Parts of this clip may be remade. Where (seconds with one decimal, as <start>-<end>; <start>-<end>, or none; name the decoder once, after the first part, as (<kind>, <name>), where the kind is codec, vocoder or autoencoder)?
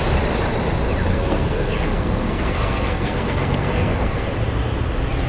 1.1-4.3 (codec, SNAC)